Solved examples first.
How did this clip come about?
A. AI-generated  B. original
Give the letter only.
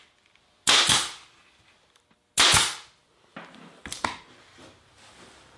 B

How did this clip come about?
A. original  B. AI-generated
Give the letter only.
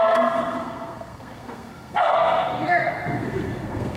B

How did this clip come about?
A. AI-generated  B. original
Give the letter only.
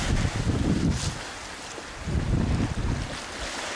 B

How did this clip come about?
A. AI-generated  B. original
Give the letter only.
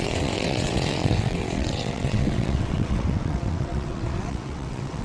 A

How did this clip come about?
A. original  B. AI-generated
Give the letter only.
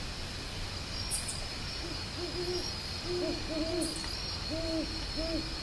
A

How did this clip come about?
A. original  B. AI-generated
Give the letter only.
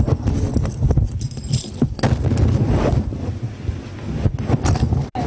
A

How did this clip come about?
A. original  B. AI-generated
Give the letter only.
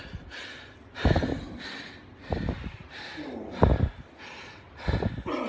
A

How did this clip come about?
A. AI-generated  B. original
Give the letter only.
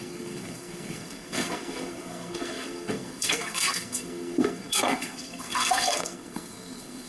A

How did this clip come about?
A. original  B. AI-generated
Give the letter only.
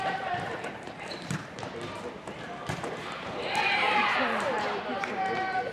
B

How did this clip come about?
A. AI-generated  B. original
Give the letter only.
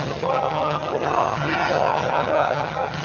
A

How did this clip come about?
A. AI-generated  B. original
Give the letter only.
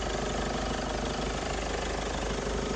B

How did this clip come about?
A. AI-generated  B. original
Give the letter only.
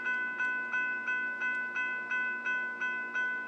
B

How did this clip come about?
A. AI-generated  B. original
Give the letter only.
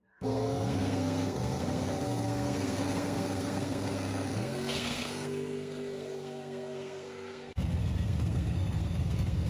A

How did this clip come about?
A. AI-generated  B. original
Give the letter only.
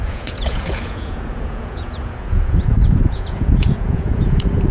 A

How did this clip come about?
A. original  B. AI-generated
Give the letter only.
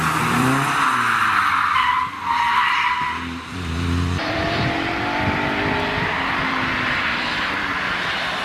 B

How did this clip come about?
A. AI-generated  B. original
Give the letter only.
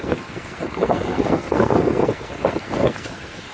A